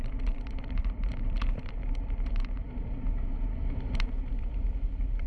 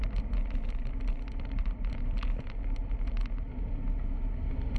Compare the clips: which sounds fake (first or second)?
first